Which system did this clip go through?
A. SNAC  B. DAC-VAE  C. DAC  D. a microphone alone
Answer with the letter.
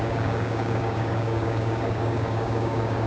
C